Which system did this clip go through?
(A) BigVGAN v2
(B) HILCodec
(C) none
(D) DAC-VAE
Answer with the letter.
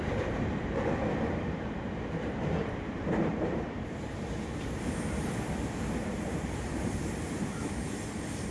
A